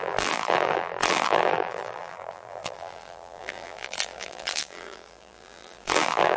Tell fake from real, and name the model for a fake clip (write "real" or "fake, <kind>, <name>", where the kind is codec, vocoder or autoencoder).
fake, vocoder, BigVGAN v2